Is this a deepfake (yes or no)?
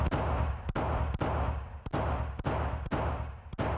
no